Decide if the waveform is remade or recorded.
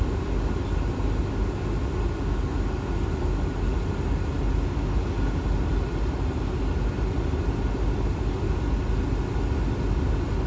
recorded